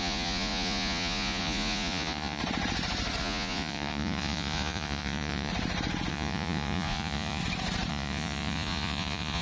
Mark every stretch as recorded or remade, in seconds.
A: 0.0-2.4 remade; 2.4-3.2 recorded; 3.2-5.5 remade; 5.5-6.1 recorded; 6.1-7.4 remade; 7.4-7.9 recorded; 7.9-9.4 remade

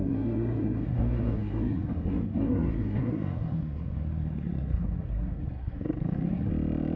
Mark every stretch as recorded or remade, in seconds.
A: 0.0-6.5 remade; 6.5-7.0 recorded

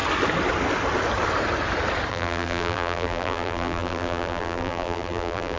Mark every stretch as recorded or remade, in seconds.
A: 0.0-2.1 recorded; 2.1-5.6 remade

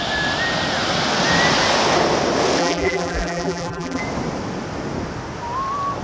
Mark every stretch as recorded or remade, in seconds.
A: 0.0-2.6 recorded; 2.6-4.0 remade; 4.0-6.0 recorded